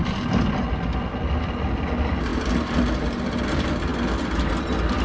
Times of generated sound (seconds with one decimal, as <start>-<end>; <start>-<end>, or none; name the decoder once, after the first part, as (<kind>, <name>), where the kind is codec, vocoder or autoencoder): none